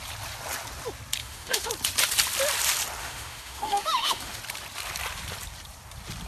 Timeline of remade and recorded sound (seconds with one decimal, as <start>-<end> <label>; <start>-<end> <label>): 0.0-1.2 recorded; 1.2-1.7 remade; 1.7-3.0 recorded; 3.0-4.4 remade; 4.4-6.3 recorded